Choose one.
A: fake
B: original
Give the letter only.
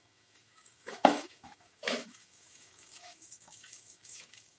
A